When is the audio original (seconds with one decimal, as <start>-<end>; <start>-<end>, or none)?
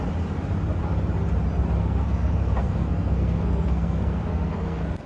0.0-1.8